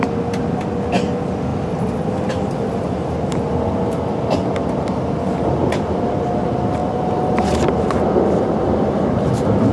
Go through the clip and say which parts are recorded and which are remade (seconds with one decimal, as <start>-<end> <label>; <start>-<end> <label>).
0.0-1.5 recorded; 1.5-3.5 remade; 3.5-6.8 recorded; 6.8-9.7 remade